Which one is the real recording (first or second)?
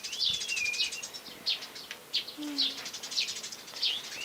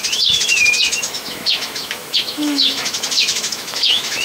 first